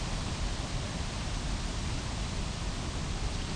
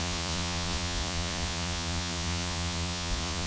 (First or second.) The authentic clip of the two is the first